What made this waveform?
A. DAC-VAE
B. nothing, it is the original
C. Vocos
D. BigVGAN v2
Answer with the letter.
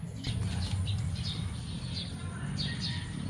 B